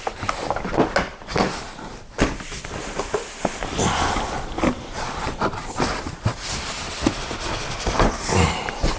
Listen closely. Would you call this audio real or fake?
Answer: real